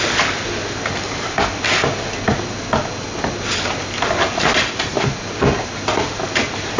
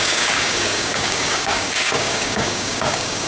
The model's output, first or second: second